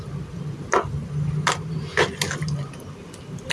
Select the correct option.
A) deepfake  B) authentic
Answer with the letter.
B